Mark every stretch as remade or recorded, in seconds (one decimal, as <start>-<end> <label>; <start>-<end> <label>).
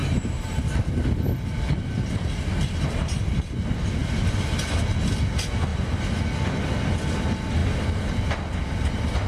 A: 0.0-0.7 remade; 0.7-4.0 recorded; 4.0-4.6 remade; 4.6-5.7 recorded; 5.7-6.2 remade; 6.2-9.3 recorded